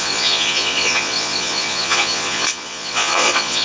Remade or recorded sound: remade